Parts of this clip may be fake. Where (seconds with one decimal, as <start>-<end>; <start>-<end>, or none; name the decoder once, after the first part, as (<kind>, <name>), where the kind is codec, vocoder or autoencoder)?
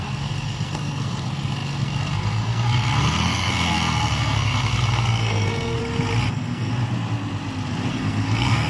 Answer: 0.0-5.8 (codec, SNAC); 6.3-6.7; 7.9-8.7